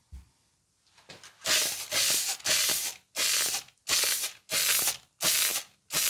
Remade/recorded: recorded